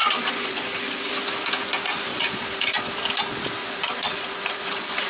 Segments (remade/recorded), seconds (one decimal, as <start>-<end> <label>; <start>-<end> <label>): 0.0-1.1 remade; 1.1-2.1 recorded; 2.1-2.9 remade; 2.9-3.6 recorded; 3.6-5.1 remade

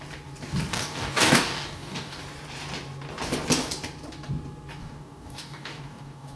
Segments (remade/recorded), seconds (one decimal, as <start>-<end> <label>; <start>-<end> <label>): 0.0-0.7 recorded; 0.7-2.2 remade; 2.2-4.8 recorded; 4.8-6.4 remade

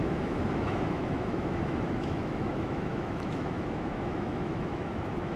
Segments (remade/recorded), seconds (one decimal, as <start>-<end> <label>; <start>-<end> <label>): 0.0-5.4 remade

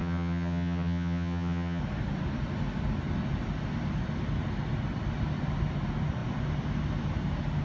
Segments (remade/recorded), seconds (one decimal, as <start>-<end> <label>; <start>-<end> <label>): 0.0-1.8 remade; 1.8-7.6 recorded

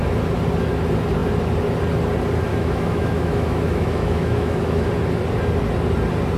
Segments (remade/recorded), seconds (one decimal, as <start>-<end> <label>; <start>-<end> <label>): 0.0-2.5 recorded; 2.5-4.9 remade; 4.9-6.4 recorded

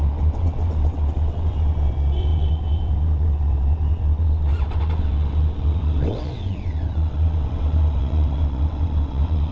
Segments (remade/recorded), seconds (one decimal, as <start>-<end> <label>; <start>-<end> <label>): 0.0-9.5 remade